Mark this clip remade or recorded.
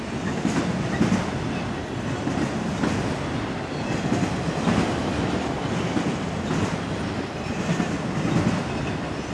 recorded